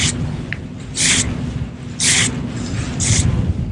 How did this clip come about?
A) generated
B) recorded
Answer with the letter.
B